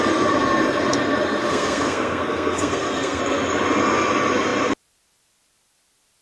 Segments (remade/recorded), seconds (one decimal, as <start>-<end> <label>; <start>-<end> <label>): 0.0-1.5 recorded; 1.5-3.2 remade; 3.2-6.2 recorded